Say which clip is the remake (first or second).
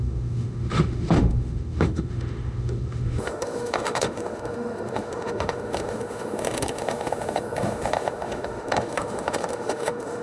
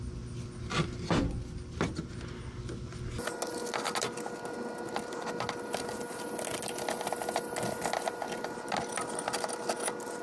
first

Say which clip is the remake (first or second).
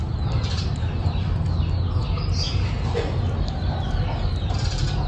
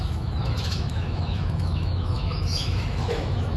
second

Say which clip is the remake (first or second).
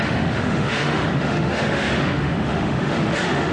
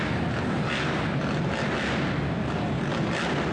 first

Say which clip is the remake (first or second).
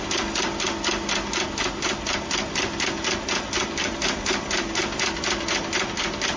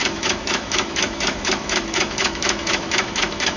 second